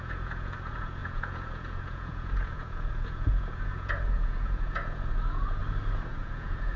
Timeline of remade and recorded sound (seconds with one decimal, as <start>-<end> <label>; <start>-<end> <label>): 0.0-5.6 remade; 5.6-6.1 recorded; 6.1-6.8 remade

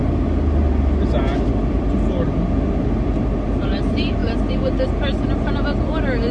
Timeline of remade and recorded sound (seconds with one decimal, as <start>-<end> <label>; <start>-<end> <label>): 0.0-6.3 recorded

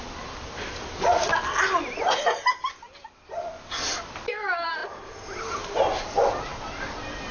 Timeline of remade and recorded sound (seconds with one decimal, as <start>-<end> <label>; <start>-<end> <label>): 0.0-1.2 remade; 1.2-3.9 recorded; 3.9-4.8 remade; 4.8-5.4 recorded; 5.4-6.5 remade; 6.5-7.3 recorded

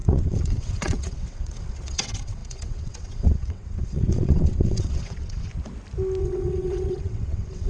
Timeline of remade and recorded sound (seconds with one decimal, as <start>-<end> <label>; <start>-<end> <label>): 0.0-5.5 remade; 5.5-6.2 recorded; 6.2-7.7 remade

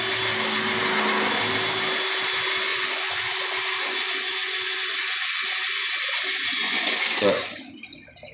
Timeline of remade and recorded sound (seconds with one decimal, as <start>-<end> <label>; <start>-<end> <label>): 0.0-2.7 recorded; 2.7-5.9 remade; 5.9-6.6 recorded; 6.6-7.6 remade; 7.6-8.3 recorded

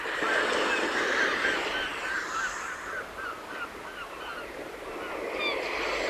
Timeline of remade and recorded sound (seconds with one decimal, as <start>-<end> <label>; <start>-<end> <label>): 0.0-6.1 recorded

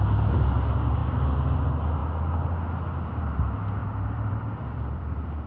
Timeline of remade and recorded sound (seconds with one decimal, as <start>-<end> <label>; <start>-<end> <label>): 0.0-1.0 recorded; 1.0-1.6 remade; 1.6-3.8 recorded; 3.8-5.5 remade

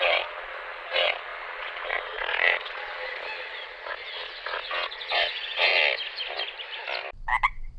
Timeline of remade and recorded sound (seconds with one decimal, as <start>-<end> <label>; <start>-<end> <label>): 0.0-5.7 remade; 5.7-7.8 recorded